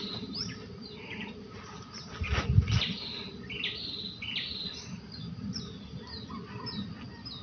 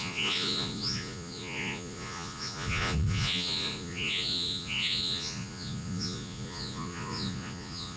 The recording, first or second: first